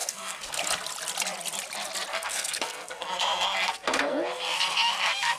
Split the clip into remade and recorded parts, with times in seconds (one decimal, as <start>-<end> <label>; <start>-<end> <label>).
0.0-0.6 remade; 0.6-2.1 recorded; 2.1-5.4 remade